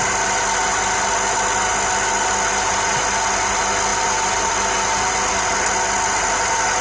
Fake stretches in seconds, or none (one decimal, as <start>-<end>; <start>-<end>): 3.9-4.5